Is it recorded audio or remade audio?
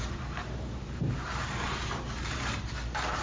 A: remade